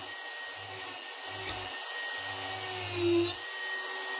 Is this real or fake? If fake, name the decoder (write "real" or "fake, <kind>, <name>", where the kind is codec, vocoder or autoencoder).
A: real